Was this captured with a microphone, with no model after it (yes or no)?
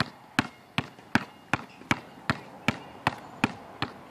yes